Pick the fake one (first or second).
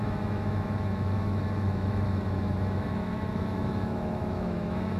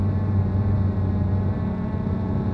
first